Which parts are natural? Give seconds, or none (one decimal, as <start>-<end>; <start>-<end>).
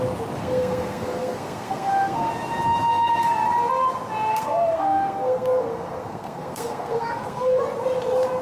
0.0-0.4; 2.3-2.9; 3.4-4.3; 7.6-8.4